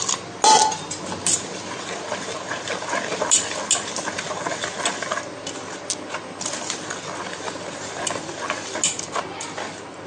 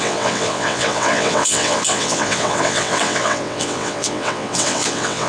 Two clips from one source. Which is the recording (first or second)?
first